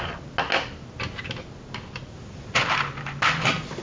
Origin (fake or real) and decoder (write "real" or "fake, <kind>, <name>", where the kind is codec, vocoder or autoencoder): real